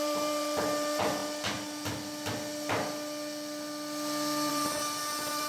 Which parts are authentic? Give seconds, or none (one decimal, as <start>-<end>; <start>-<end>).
1.2-4.5